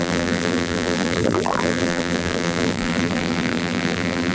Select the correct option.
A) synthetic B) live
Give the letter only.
A